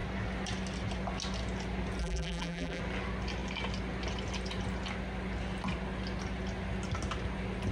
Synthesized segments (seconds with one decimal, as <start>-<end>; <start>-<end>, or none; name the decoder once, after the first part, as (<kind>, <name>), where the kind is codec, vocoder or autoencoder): 2.0-2.8 (vocoder, BigVGAN v2)